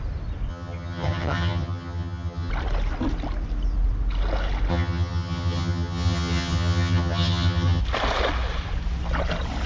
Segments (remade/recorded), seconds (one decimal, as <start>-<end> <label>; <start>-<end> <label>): 0.0-0.5 recorded; 0.5-2.5 remade; 2.5-4.7 recorded; 4.7-7.8 remade; 7.8-9.7 recorded